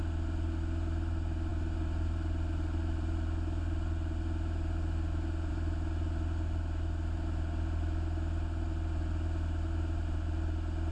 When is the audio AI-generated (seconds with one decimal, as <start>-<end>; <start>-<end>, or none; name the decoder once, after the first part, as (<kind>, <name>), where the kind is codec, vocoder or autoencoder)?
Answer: none